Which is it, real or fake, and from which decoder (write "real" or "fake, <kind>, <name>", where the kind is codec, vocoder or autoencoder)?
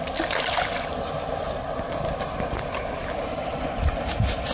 real